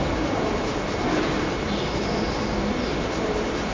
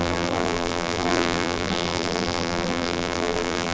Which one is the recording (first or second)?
first